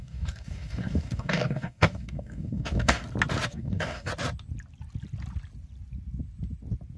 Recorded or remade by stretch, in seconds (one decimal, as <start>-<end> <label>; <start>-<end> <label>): 0.0-3.0 remade; 3.0-3.5 recorded; 3.5-4.1 remade; 4.1-7.0 recorded